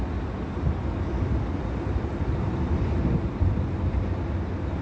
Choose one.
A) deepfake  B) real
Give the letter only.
B